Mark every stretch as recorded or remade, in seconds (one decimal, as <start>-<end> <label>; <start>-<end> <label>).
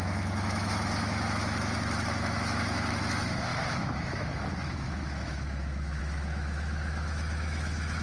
0.0-8.0 remade